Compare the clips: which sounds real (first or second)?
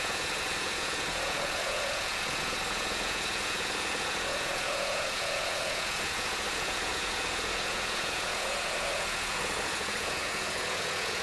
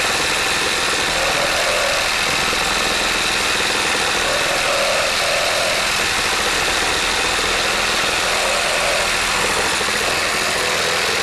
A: second